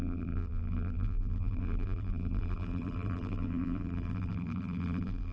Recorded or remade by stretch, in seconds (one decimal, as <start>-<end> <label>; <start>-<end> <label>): 0.0-5.3 remade